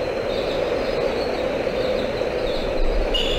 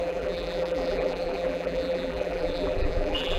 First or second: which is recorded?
first